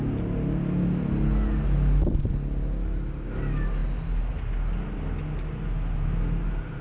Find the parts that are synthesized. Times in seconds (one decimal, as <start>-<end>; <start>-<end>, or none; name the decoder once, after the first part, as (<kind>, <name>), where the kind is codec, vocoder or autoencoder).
none